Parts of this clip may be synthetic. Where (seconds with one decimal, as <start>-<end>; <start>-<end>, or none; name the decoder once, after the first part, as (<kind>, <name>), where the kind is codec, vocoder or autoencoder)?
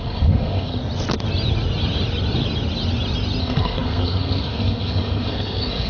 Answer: 0.0-0.8 (codec, SNAC); 3.4-5.9